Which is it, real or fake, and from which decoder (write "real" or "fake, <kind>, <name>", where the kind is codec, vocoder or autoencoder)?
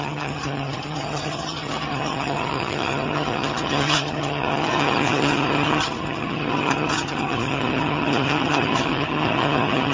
fake, vocoder, HiFi-GAN